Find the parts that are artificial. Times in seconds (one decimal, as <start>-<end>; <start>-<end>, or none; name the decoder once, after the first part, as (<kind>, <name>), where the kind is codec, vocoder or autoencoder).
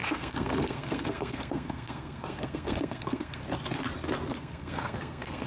0.0-3.4 (codec, SNAC); 4.4-5.5